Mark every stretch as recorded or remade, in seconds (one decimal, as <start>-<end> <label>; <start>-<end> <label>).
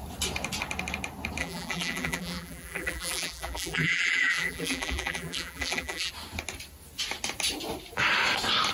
0.0-1.4 recorded; 1.4-6.1 remade; 6.1-8.7 recorded